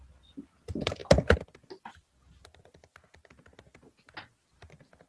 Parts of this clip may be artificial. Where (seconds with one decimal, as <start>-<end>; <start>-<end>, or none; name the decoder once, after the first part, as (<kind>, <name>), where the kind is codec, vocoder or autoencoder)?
none